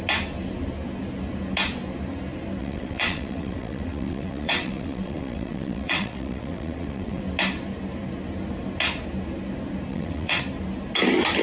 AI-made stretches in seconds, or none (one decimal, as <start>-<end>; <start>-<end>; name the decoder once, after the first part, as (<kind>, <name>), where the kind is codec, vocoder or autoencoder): 2.6-7.2 (vocoder, WaveNeXt); 9.9-10.4